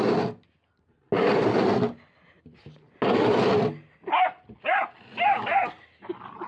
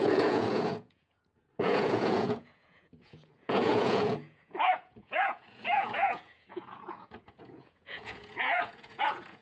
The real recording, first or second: first